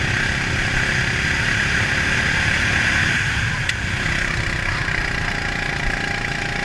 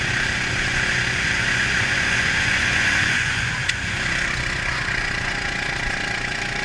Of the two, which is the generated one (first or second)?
second